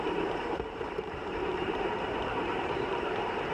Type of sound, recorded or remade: remade